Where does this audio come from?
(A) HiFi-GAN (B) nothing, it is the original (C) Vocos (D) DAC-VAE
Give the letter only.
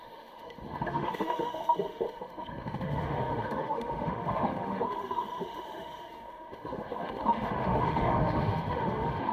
D